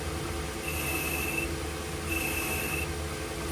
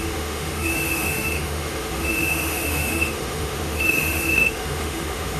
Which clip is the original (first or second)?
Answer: first